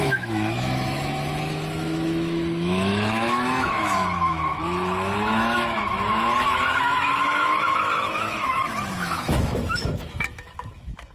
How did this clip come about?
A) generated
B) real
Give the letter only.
A